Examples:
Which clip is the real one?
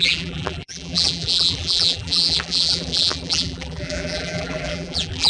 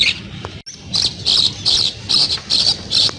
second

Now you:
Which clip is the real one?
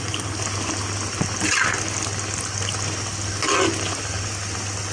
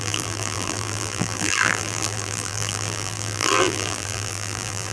first